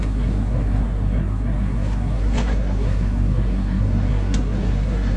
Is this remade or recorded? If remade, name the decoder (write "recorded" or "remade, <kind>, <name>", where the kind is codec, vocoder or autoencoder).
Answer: remade, codec, SNAC